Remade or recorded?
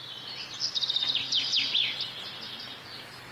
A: recorded